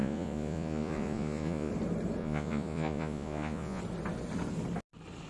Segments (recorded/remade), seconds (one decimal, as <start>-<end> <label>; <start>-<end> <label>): 0.0-1.7 remade; 1.7-2.2 recorded; 2.2-3.8 remade; 3.8-5.3 recorded